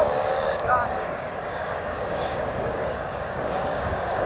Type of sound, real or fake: fake